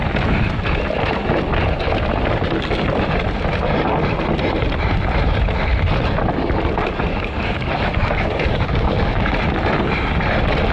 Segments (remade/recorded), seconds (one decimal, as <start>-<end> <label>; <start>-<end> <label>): 0.0-7.1 recorded; 7.1-9.3 remade; 9.3-10.7 recorded

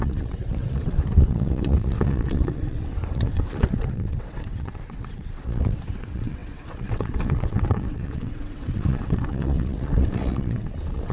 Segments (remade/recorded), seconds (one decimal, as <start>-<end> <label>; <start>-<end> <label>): 0.0-11.1 remade